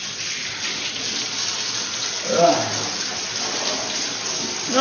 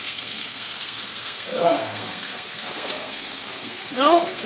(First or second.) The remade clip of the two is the second